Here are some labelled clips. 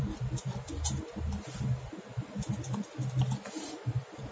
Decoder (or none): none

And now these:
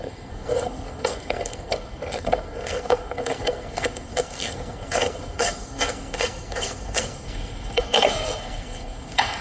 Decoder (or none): codec, SNAC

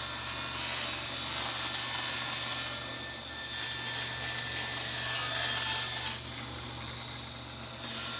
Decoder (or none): none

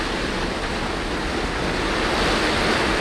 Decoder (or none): none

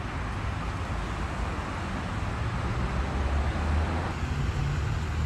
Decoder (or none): none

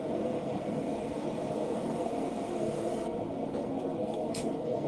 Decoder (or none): codec, SNAC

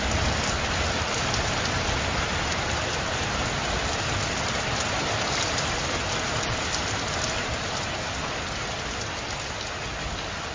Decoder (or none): none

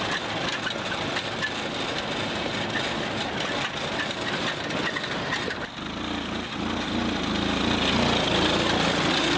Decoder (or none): none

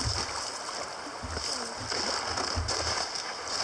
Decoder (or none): none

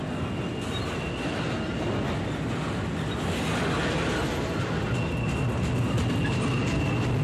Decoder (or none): none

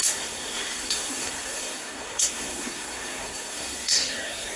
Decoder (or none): codec, SNAC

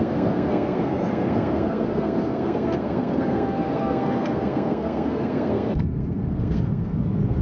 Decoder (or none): codec, SNAC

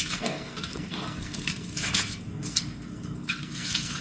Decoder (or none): codec, SNAC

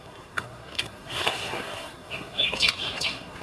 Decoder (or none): codec, SNAC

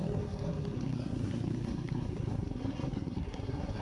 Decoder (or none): codec, SNAC